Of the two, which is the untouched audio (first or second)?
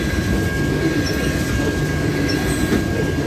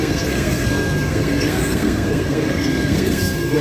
first